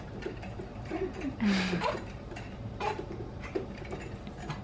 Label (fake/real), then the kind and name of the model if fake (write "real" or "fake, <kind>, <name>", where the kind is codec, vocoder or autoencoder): fake, vocoder, BigVGAN v2